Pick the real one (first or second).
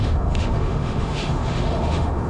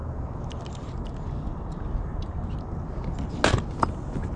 second